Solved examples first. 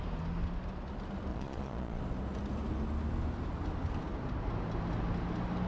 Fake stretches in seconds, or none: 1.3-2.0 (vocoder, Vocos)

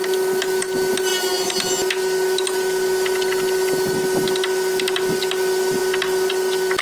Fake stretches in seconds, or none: none